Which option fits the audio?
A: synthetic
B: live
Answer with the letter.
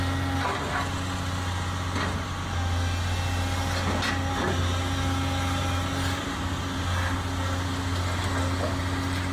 B